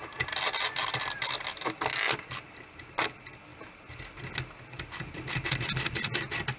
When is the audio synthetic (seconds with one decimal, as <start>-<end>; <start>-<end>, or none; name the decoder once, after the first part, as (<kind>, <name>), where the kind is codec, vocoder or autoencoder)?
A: none